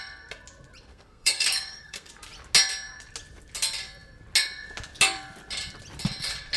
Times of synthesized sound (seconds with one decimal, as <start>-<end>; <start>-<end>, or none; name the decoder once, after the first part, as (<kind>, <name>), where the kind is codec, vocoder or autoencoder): 0.9-2.1 (codec, SNAC)